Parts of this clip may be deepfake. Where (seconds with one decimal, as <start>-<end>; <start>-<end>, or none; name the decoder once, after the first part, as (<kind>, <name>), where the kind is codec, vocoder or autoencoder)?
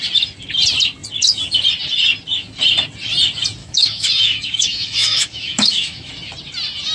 3.6-6.1 (autoencoder, DAC-VAE)